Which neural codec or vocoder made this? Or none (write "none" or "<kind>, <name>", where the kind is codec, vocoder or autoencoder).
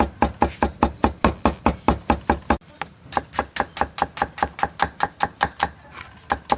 none